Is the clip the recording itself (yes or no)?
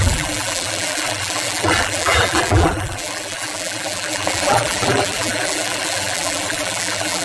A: no